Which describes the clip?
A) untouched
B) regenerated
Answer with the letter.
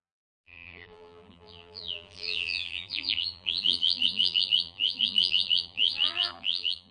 B